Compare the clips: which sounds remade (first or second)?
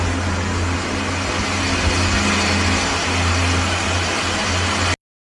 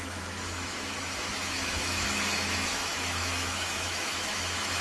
second